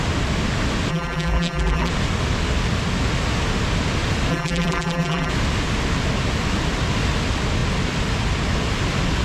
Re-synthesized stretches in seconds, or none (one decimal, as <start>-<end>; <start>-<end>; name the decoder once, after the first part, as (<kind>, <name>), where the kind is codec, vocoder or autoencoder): 0.9-1.9 (vocoder, BigVGAN v2); 4.3-5.3